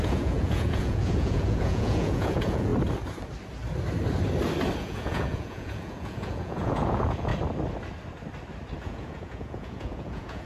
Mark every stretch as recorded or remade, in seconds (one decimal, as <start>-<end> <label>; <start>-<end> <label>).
0.0-2.7 remade; 2.7-4.8 recorded; 4.8-7.3 remade; 7.3-8.8 recorded; 8.8-10.5 remade